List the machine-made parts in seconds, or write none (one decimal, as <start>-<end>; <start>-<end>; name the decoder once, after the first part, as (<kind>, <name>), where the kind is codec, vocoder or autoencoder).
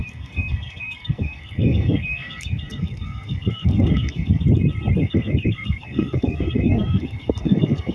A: 0.0-4.4 (codec, SNAC); 5.0-7.9